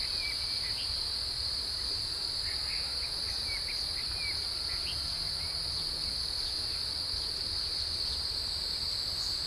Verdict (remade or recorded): recorded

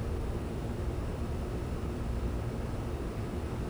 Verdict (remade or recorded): remade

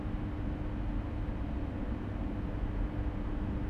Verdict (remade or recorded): recorded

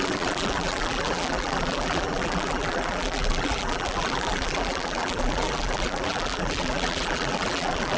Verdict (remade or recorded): remade